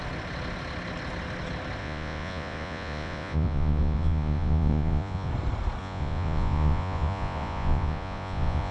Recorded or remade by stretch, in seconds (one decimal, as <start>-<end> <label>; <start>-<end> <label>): 0.0-1.8 recorded; 1.8-5.3 remade; 5.3-5.8 recorded; 5.8-8.7 remade